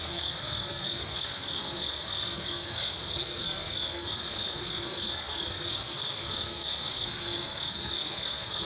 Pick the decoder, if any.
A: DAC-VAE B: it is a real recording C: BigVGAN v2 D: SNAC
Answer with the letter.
D